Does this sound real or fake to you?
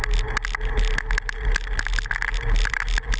real